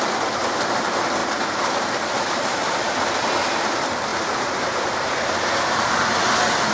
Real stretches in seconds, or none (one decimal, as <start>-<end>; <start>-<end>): 0.0-1.2; 2.8-4.1; 5.9-6.7